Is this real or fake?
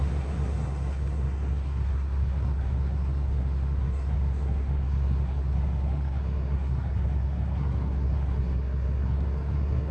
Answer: fake